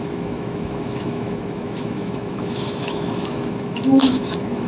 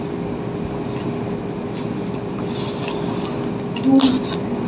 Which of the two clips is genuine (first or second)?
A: second